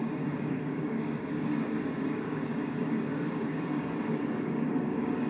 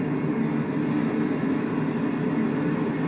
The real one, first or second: second